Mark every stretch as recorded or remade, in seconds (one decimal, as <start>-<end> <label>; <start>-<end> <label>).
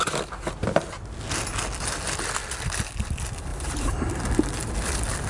0.0-3.5 recorded; 3.5-4.1 remade; 4.1-5.3 recorded